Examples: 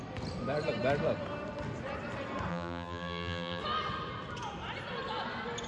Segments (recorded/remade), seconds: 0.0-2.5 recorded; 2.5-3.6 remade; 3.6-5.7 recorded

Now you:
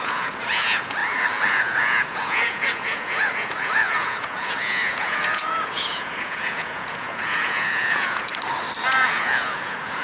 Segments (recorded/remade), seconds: 0.0-1.0 remade; 1.0-1.5 recorded; 1.5-8.3 remade; 8.3-8.9 recorded; 8.9-10.0 remade

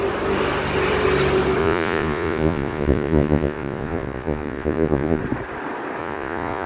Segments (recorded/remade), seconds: 0.0-1.6 recorded; 1.6-5.2 remade; 5.2-6.0 recorded; 6.0-6.7 remade

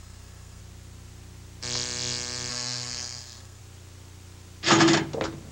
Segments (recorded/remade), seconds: 0.0-0.6 remade; 0.6-2.5 recorded; 2.5-3.6 remade; 3.6-5.5 recorded